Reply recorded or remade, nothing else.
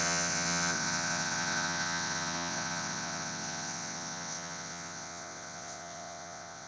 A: remade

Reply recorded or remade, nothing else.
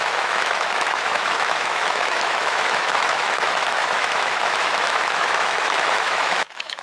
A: remade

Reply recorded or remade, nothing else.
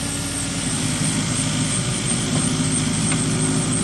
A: recorded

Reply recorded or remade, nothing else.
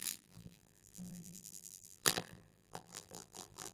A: remade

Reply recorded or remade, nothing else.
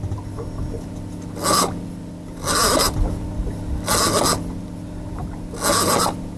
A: recorded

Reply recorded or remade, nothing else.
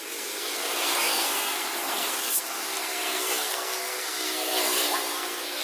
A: remade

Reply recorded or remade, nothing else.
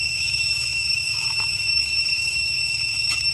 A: remade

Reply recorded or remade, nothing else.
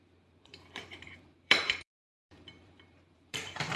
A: remade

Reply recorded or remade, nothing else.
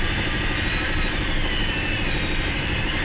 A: recorded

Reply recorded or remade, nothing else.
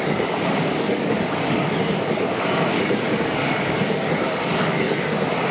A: remade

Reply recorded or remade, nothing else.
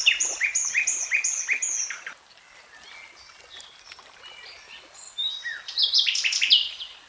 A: recorded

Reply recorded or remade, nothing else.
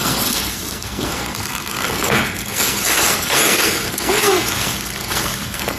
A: remade